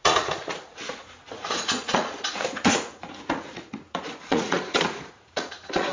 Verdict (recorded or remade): remade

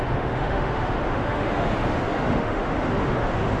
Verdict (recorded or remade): remade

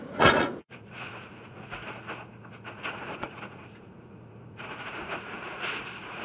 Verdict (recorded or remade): remade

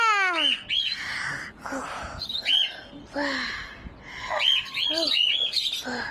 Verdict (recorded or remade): recorded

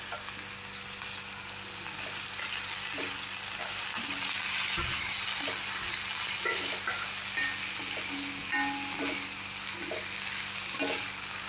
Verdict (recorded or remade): recorded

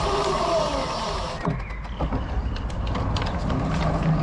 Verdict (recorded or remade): recorded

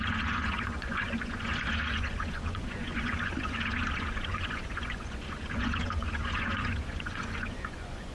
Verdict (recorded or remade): remade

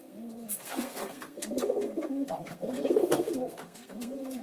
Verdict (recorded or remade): remade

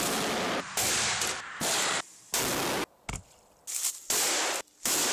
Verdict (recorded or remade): recorded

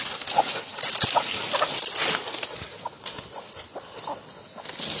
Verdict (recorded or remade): recorded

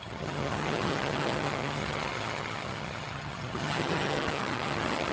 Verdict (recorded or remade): remade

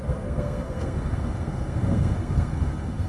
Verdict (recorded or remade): remade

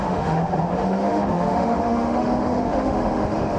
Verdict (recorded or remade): remade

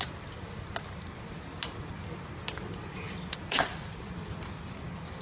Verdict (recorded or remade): recorded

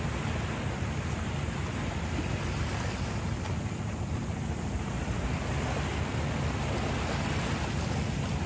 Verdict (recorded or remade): recorded